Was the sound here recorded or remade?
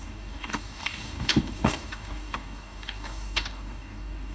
remade